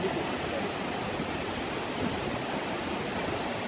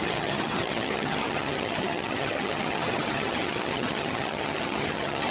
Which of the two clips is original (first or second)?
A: first